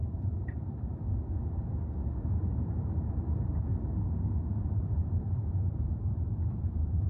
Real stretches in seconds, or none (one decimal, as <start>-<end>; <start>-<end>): 0.9-2.3; 3.7-4.5